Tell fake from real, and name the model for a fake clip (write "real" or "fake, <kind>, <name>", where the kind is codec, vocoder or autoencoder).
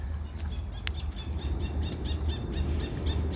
real